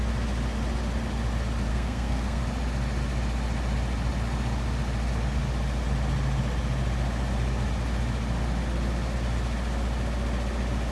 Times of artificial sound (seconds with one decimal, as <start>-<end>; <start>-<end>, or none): 1.7-2.4